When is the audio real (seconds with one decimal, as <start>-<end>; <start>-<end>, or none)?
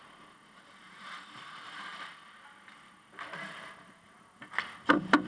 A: 0.0-5.3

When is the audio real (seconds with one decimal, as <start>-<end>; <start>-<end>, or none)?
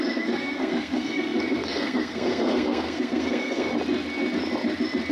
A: 3.7-5.1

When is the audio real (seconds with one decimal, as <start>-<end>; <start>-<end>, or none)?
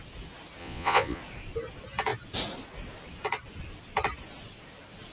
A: 0.0-0.6; 1.2-5.1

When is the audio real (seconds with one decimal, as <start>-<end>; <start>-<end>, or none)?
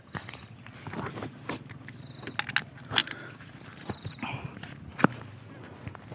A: 0.0-3.0; 4.3-6.1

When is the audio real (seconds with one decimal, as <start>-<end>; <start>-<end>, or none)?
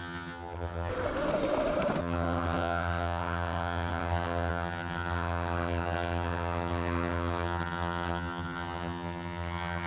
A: 0.9-2.0